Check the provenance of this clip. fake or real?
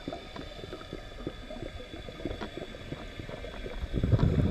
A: real